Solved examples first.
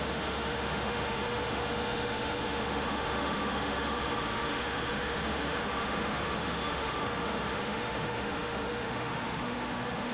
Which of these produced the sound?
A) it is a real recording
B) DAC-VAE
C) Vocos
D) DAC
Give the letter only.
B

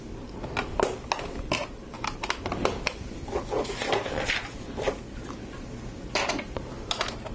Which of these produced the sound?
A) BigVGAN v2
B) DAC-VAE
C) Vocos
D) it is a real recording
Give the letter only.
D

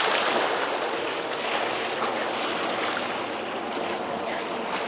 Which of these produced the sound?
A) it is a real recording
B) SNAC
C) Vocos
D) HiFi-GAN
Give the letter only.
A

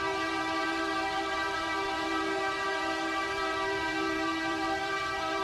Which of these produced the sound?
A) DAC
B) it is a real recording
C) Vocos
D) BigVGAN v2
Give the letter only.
D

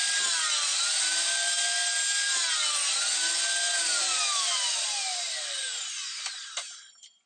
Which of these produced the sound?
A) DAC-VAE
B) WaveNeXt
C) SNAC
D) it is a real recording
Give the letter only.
D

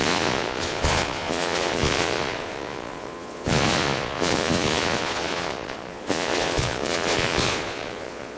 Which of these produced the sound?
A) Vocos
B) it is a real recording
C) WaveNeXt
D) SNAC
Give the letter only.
A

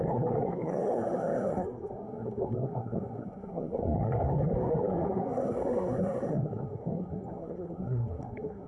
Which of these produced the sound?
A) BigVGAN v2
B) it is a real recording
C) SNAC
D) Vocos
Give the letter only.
C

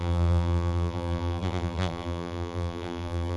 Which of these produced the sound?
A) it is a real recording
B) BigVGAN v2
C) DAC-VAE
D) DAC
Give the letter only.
B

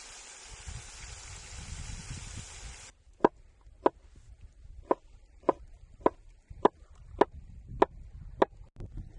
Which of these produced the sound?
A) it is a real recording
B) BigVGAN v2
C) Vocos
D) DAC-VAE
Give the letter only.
A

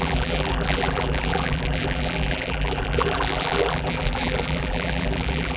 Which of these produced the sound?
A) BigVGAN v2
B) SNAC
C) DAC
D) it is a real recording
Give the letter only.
A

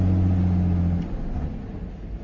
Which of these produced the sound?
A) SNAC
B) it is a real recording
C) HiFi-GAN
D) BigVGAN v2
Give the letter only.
B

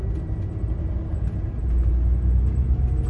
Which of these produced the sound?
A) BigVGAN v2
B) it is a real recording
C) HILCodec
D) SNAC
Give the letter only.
B